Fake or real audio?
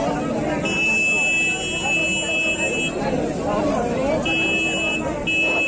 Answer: real